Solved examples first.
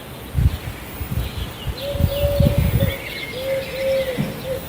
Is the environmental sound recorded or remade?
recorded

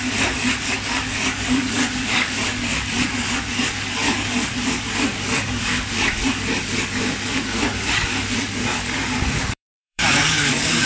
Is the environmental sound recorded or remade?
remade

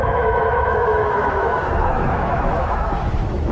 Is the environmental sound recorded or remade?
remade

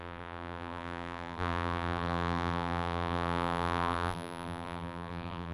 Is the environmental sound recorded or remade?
remade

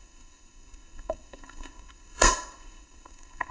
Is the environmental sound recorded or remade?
remade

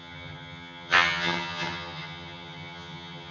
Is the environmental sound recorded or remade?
remade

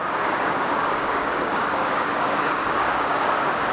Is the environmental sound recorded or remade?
remade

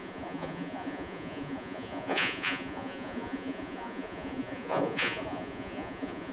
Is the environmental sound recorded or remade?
remade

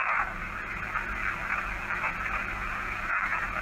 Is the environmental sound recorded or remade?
recorded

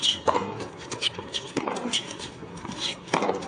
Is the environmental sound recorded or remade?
remade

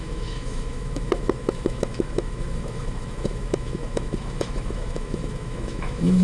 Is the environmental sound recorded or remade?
remade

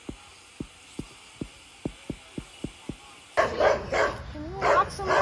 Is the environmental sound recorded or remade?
recorded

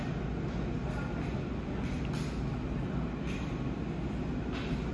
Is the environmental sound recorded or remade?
recorded